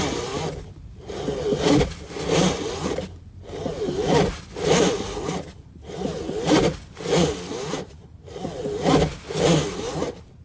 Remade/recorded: recorded